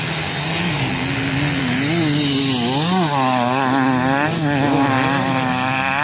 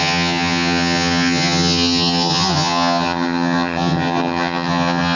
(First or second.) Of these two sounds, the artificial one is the second